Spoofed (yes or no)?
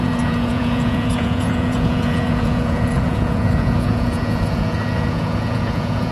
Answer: yes